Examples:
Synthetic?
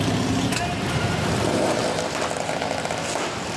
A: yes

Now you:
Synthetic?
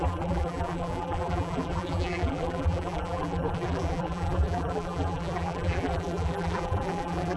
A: yes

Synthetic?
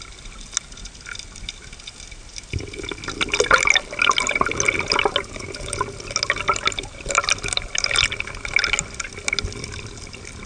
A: no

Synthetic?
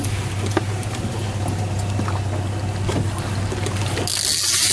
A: no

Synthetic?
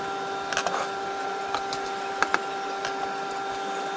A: no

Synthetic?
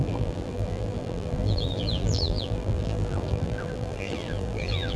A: yes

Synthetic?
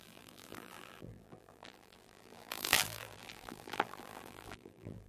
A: yes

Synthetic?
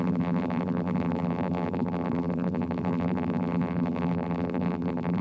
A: yes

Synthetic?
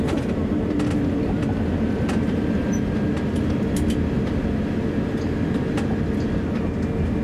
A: no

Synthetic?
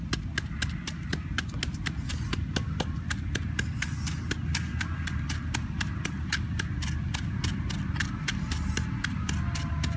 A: no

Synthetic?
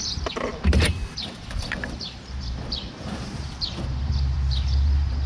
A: yes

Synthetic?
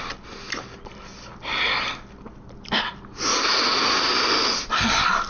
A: no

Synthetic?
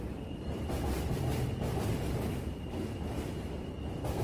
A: no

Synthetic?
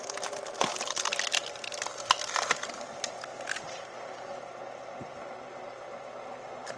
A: no